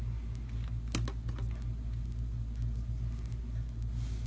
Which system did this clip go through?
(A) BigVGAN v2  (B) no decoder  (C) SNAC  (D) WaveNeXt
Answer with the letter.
B